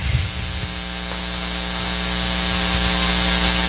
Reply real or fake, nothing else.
real